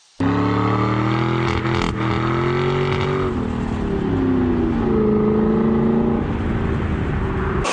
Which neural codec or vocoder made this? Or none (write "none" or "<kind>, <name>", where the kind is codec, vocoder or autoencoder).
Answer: none